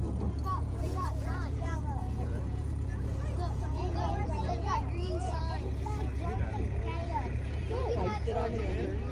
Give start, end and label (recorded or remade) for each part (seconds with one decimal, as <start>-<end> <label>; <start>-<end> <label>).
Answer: 0.0-0.5 recorded; 0.5-5.4 remade; 5.4-7.0 recorded; 7.0-8.7 remade; 8.7-9.1 recorded